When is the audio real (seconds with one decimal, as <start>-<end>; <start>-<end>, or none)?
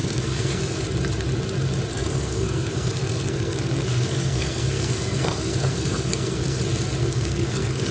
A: 0.6-1.9; 6.6-7.0